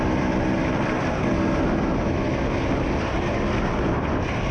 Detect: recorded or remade recorded